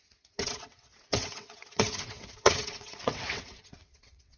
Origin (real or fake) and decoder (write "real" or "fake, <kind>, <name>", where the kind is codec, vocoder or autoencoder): fake, vocoder, WaveNeXt